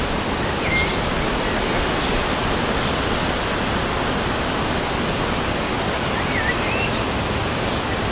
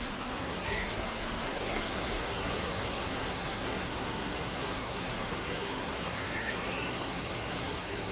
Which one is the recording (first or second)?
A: first